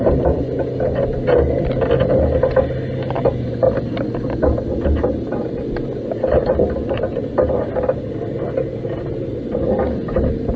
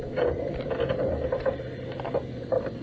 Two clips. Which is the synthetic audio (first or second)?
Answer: second